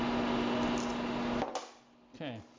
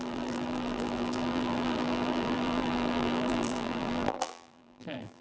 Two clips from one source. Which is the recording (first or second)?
first